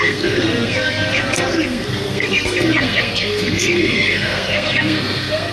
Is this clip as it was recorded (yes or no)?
no